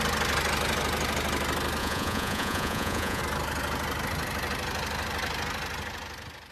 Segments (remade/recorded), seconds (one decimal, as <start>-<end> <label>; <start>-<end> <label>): 0.0-1.8 recorded; 1.8-3.2 remade; 3.2-6.5 recorded